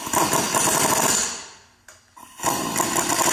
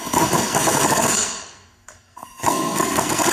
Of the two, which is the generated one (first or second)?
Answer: second